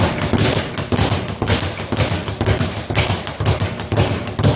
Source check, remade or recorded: recorded